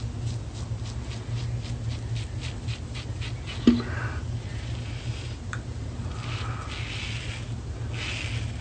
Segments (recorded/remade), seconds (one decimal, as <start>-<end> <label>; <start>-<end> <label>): 0.0-4.5 recorded; 4.5-6.1 remade; 6.1-8.6 recorded